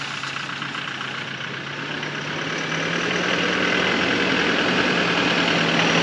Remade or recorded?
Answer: recorded